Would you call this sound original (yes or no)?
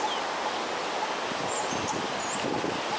yes